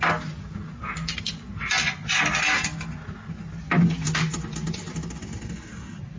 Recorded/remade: recorded